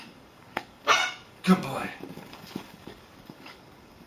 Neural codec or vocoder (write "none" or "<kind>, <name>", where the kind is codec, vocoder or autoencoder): codec, DAC